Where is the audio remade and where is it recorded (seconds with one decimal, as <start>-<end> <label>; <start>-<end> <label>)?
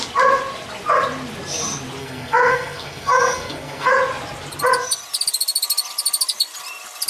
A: 0.0-2.0 recorded; 2.0-3.9 remade; 3.9-7.1 recorded